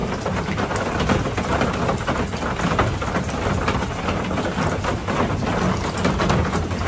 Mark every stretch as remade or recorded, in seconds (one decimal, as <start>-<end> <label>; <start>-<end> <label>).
0.0-6.9 recorded